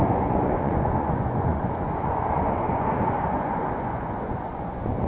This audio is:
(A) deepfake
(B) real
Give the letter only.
A